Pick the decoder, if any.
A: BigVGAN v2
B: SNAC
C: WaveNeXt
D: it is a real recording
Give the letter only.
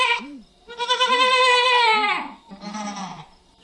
A